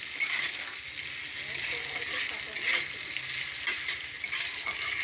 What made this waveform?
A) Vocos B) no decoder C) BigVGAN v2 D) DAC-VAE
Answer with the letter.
B